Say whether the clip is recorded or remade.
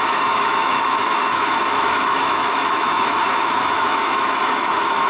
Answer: remade